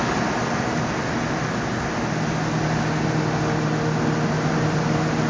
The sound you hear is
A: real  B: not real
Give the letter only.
A